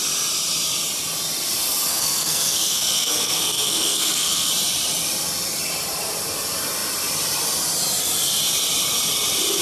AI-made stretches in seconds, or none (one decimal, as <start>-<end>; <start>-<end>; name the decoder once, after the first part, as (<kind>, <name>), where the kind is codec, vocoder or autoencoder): 1.9-4.5 (codec, SNAC)